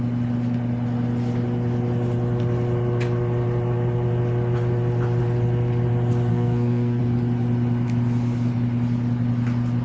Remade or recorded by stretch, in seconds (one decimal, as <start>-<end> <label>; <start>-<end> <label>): 0.0-6.3 recorded; 6.3-7.0 remade; 7.0-9.8 recorded

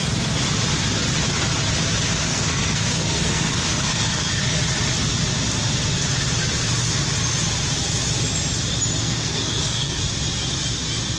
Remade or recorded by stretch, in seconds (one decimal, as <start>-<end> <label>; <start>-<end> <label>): 0.0-2.3 recorded; 2.3-4.3 remade; 4.3-9.0 recorded; 9.0-10.0 remade; 10.0-11.2 recorded

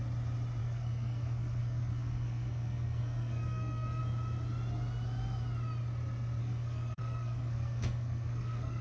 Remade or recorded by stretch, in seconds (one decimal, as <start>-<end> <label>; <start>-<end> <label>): 0.0-0.6 recorded; 0.6-4.0 remade; 4.0-6.4 recorded; 6.4-8.8 remade

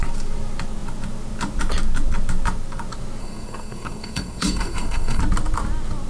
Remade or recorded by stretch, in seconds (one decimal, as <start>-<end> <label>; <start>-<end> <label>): 0.0-3.2 recorded; 3.2-5.2 remade; 5.2-6.1 recorded

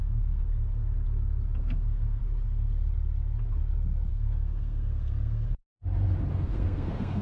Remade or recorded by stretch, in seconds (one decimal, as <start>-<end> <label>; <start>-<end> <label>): 0.0-0.5 remade; 0.5-1.6 recorded; 1.6-2.2 remade; 2.2-4.1 recorded; 4.1-5.6 remade; 5.6-6.3 recorded; 6.3-7.2 remade

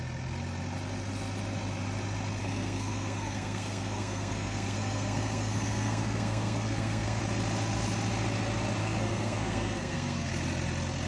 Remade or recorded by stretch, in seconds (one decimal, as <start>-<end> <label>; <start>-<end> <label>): 0.0-2.4 recorded; 2.4-7.2 remade; 7.2-8.8 recorded; 8.8-10.3 remade; 10.3-11.1 recorded